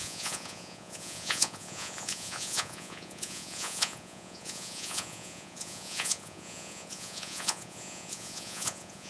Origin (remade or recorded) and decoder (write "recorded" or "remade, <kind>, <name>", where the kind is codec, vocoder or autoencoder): remade, vocoder, Vocos